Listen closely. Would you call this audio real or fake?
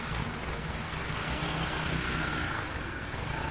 fake